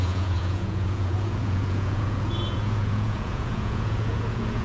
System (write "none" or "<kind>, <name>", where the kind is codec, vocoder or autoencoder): vocoder, Vocos